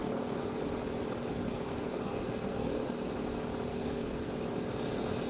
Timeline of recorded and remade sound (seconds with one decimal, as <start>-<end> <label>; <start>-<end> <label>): 0.0-0.6 remade; 0.6-1.3 recorded; 1.3-3.0 remade; 3.0-3.7 recorded; 3.7-4.3 remade; 4.3-5.3 recorded